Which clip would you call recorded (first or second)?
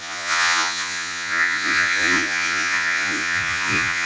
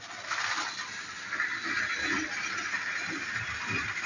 second